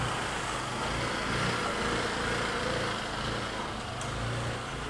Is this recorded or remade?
recorded